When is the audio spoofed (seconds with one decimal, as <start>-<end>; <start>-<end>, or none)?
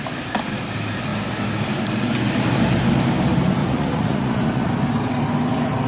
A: 3.6-4.7